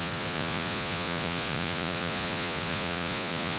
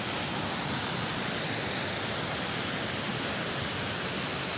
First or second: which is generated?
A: first